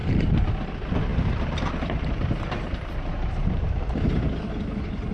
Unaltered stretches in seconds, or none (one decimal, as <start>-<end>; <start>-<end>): 0.5-1.1; 3.7-5.1